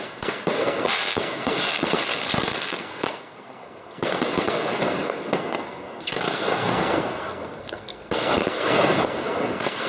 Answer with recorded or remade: remade